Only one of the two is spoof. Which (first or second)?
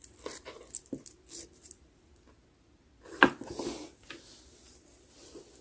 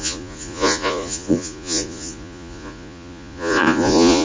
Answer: second